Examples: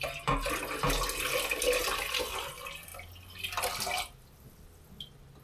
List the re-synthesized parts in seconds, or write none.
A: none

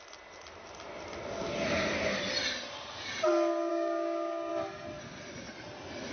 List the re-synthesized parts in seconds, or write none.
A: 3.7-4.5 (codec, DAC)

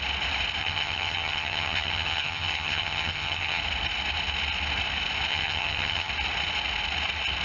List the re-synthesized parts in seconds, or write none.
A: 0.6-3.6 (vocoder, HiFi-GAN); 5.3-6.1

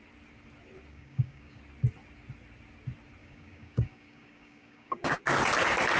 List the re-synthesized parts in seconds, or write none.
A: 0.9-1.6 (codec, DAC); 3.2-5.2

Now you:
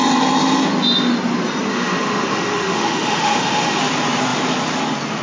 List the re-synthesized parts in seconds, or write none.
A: 1.7-3.8 (autoencoder, DAC-VAE)